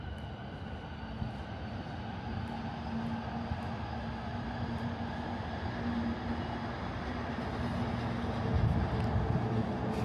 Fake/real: real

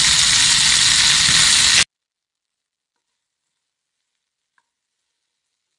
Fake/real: real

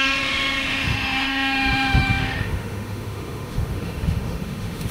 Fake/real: fake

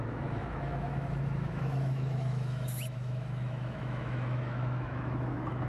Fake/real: fake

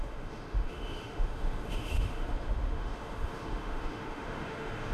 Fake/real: fake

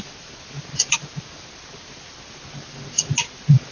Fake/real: real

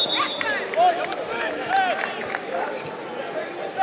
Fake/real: real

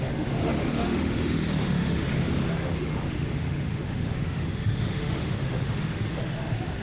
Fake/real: fake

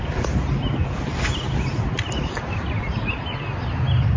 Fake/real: real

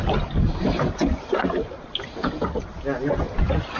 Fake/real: real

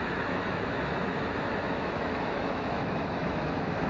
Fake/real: fake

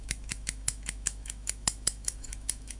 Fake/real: fake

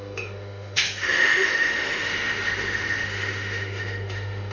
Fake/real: fake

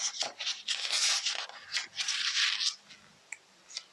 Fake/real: real